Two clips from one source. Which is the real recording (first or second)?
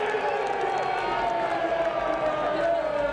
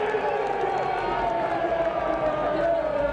first